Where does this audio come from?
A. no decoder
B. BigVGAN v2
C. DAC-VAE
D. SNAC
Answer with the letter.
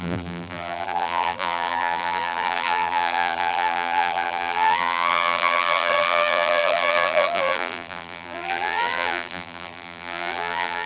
B